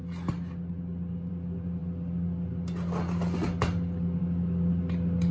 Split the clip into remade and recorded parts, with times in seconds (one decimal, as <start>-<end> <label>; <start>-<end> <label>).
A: 0.0-5.3 recorded